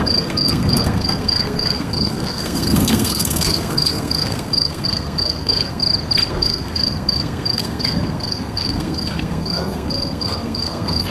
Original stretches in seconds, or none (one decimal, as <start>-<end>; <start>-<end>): 5.8-6.3